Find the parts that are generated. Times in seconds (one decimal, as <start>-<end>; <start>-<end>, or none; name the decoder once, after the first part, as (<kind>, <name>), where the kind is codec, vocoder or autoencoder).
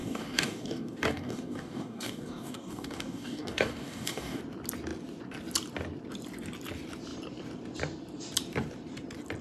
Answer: 0.0-4.4 (codec, DAC)